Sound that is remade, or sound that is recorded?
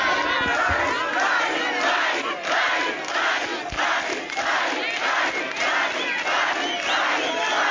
recorded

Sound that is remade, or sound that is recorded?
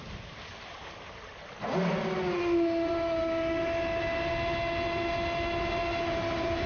recorded